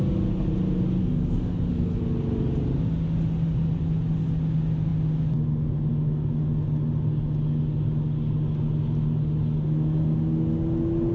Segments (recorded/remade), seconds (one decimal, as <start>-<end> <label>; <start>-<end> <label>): 0.0-1.0 recorded; 1.0-2.0 remade; 2.0-11.1 recorded